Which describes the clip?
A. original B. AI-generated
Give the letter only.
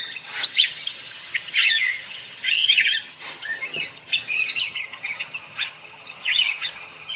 B